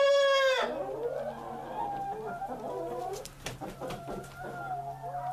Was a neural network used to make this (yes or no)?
no